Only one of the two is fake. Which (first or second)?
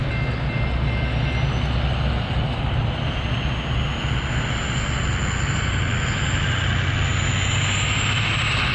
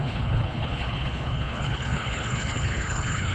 second